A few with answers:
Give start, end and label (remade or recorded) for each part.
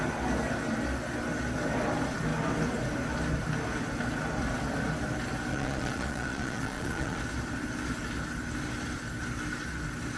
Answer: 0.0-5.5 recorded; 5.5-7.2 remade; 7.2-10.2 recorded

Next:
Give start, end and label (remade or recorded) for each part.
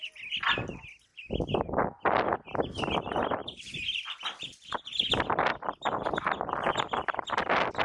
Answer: 0.0-7.8 recorded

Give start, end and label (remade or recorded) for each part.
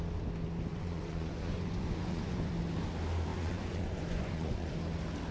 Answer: 0.0-0.7 recorded; 0.7-2.5 remade; 2.5-3.3 recorded; 3.3-4.7 remade; 4.7-5.3 recorded